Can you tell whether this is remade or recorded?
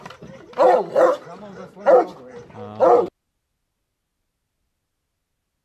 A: recorded